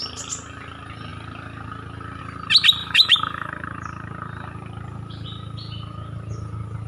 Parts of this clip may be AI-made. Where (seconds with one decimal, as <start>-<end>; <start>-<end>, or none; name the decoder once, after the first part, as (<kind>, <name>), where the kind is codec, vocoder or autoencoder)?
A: 2.8-3.5 (autoencoder, DAC-VAE)